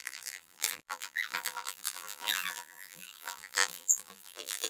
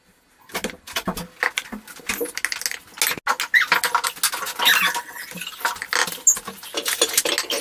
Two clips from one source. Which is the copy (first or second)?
first